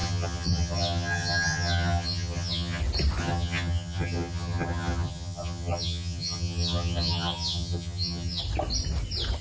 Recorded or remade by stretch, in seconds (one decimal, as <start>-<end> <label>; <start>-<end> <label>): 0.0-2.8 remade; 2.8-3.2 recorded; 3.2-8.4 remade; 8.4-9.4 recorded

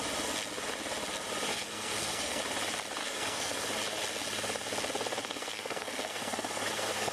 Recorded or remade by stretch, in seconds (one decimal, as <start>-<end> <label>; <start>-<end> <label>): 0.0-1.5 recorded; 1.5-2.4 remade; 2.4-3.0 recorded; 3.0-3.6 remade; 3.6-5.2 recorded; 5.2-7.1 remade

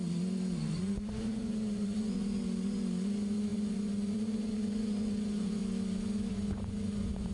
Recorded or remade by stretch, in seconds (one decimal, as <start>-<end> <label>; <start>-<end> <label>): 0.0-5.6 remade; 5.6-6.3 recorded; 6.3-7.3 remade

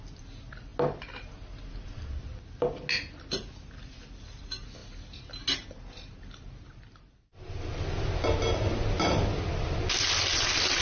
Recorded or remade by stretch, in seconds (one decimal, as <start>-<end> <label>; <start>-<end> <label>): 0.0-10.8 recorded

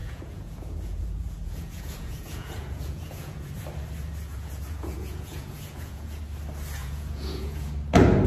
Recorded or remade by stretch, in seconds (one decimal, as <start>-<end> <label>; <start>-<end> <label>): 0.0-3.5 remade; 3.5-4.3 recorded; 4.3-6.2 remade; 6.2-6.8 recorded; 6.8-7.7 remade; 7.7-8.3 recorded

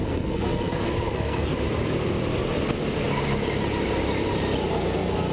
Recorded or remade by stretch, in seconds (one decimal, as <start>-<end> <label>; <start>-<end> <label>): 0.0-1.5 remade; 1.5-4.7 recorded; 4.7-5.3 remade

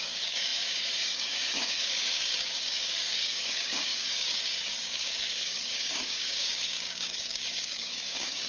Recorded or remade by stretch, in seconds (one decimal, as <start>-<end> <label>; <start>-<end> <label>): 0.0-8.5 remade

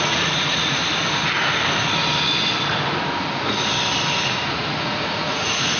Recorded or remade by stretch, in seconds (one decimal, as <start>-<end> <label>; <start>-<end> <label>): 0.0-0.8 remade; 0.8-4.3 recorded; 4.3-5.8 remade